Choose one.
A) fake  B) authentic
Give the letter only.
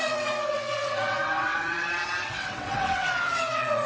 A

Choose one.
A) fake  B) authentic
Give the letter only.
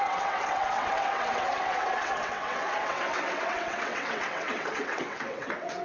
A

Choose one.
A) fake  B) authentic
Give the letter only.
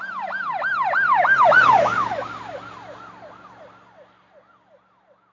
B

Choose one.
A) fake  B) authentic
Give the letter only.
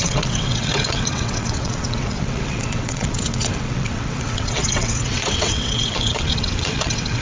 A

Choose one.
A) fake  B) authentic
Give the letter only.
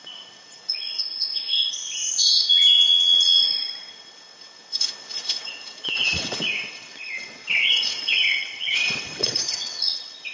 A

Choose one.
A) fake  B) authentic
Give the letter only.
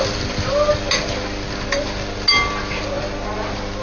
B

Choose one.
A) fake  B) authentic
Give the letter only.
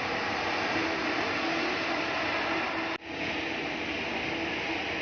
B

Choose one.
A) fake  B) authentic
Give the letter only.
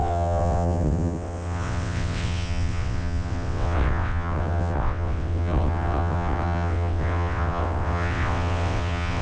A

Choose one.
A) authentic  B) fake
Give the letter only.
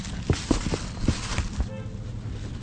A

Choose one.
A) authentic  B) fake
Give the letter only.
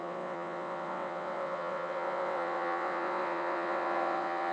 B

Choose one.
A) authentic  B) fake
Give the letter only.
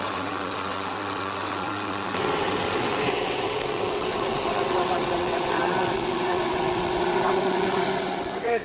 B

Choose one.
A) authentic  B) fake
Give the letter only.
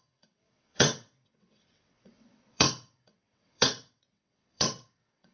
B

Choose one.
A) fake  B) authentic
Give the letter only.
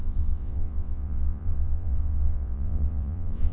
A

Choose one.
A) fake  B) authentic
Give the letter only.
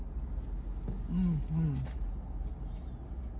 B